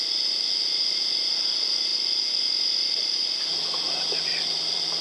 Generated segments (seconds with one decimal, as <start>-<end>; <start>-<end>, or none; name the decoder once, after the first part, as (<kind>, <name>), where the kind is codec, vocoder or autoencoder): none